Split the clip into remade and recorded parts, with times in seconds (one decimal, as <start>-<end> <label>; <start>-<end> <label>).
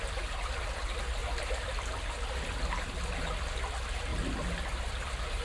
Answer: 0.0-1.2 recorded; 1.2-1.9 remade; 1.9-4.1 recorded; 4.1-5.4 remade